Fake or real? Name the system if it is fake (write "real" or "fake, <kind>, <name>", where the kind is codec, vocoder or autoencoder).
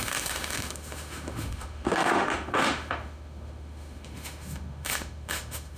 fake, autoencoder, DAC-VAE